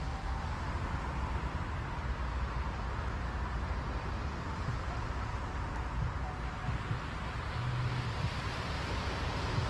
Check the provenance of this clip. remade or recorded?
recorded